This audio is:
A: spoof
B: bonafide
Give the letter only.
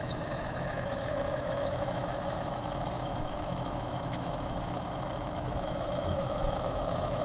A